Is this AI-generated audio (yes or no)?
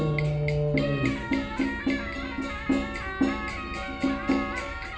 no